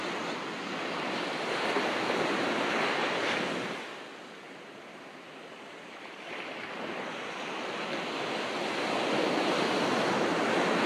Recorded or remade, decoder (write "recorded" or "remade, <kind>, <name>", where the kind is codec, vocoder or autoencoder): recorded